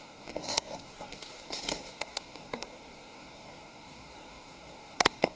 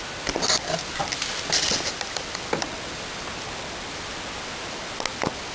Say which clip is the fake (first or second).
first